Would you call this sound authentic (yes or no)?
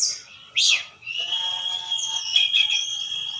no